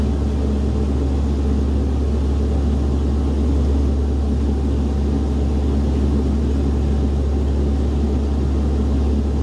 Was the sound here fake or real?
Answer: real